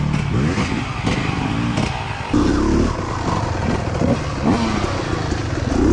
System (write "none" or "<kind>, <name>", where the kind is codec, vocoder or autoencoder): none